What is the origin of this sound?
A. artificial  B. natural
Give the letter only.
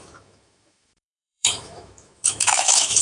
A